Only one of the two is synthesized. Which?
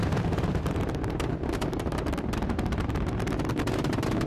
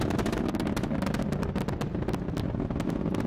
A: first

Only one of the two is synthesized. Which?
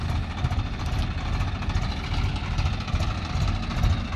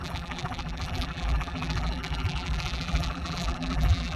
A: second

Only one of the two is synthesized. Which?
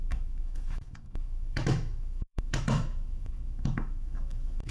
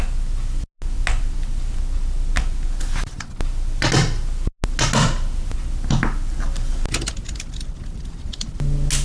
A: first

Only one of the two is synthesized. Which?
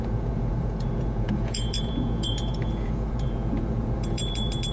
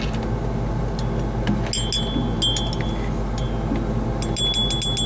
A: first